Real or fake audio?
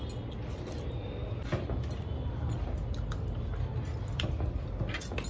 real